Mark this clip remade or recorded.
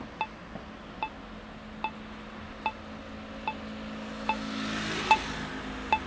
recorded